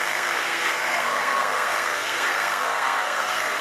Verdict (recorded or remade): remade